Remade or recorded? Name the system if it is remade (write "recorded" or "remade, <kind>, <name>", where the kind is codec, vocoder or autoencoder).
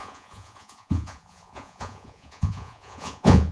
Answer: remade, vocoder, Vocos